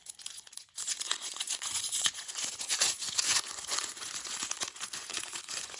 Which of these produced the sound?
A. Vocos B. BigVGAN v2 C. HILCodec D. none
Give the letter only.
A